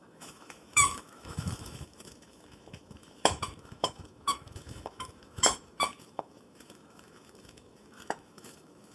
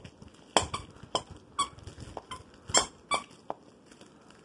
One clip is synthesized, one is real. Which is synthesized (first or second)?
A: first